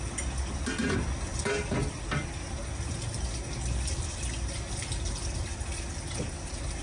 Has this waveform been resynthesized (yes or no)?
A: no